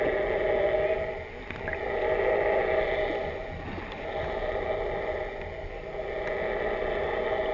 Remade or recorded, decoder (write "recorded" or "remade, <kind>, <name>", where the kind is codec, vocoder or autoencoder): recorded